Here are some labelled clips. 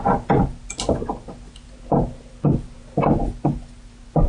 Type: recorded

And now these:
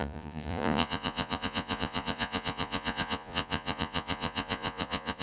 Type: remade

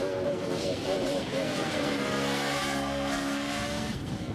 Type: remade